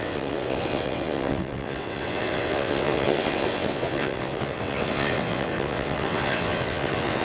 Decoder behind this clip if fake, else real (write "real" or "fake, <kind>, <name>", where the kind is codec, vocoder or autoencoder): fake, vocoder, WaveNeXt